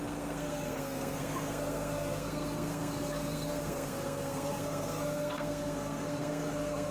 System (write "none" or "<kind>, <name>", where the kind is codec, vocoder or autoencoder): codec, SNAC